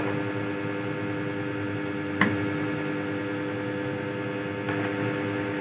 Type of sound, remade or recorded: recorded